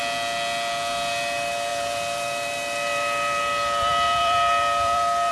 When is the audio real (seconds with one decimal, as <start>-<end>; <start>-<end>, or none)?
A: 0.0-1.7